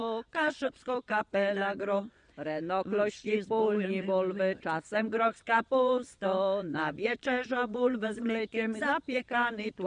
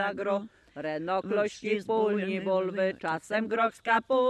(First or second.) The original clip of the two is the second